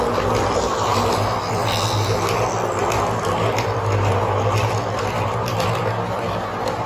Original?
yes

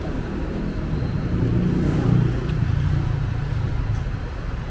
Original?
yes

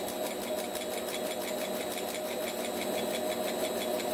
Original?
yes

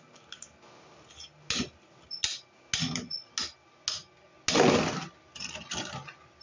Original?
yes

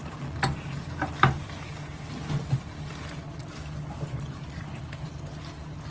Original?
yes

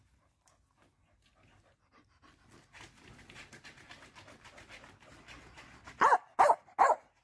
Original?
yes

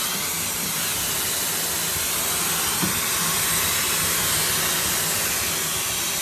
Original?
yes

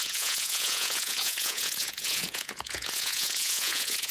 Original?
no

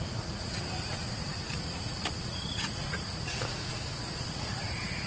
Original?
no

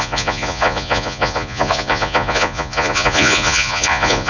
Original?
no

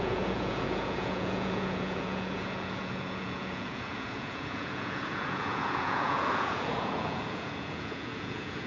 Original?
no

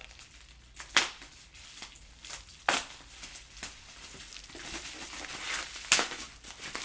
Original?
yes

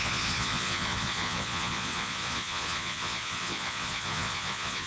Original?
no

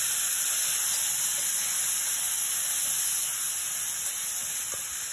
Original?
yes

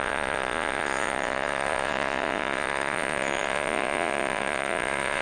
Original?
no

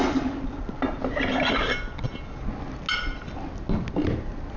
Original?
yes